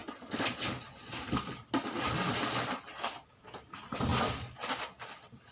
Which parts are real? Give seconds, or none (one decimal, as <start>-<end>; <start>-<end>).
0.0-5.5